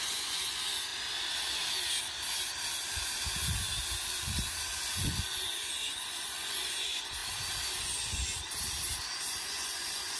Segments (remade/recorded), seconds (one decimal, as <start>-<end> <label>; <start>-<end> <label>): 0.0-0.9 remade; 0.9-4.6 recorded; 4.6-7.2 remade; 7.2-7.8 recorded; 7.8-8.2 remade; 8.2-9.3 recorded; 9.3-10.2 remade